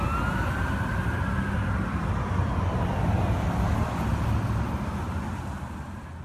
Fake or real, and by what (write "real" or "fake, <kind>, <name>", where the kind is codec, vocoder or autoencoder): real